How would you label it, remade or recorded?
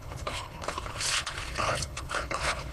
remade